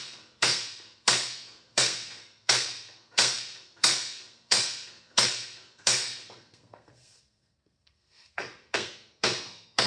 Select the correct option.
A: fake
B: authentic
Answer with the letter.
A